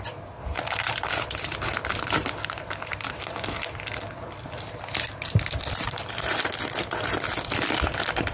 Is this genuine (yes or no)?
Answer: yes